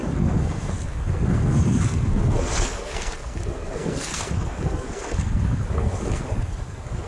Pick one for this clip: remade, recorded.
remade